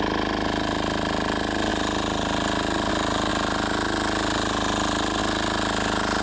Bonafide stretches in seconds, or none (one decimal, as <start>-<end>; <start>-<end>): 0.0-6.2